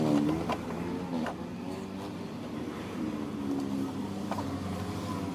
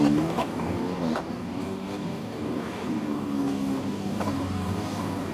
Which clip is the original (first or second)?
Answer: first